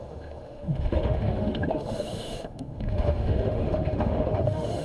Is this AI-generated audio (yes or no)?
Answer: yes